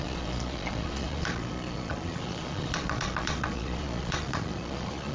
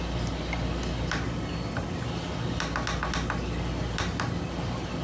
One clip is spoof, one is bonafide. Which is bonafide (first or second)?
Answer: second